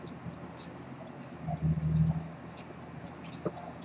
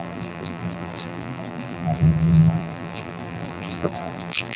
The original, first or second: first